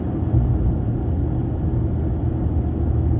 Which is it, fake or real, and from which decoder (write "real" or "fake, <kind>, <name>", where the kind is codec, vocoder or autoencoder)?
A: real